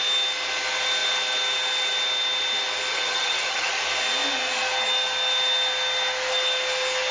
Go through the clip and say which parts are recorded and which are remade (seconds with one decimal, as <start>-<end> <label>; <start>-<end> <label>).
0.0-2.9 recorded; 2.9-3.7 remade; 3.7-7.1 recorded